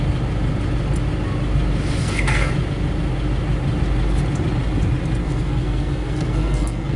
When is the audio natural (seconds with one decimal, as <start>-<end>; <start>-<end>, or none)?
0.0-2.0; 2.5-5.2